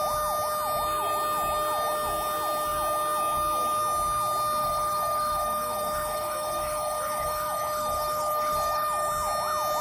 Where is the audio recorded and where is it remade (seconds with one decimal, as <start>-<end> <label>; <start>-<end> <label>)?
0.0-4.6 recorded; 4.6-9.1 remade; 9.1-9.8 recorded